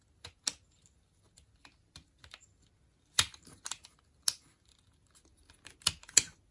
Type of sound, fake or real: real